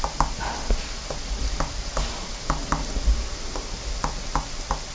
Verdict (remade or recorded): recorded